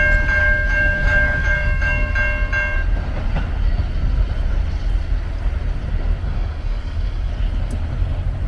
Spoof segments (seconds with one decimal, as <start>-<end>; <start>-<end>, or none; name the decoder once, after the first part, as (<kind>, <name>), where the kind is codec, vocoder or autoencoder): 0.4-2.1 (codec, DAC); 6.2-7.3